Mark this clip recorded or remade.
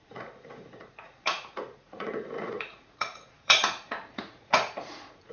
remade